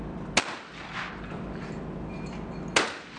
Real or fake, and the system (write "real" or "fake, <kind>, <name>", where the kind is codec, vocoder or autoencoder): real